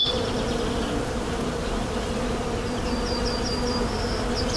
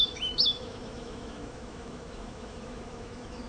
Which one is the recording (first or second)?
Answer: first